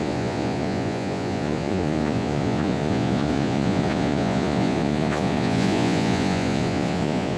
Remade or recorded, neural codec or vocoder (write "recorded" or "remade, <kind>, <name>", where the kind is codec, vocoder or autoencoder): remade, vocoder, Vocos